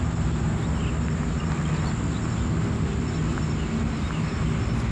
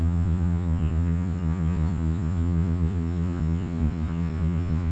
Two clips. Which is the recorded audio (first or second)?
first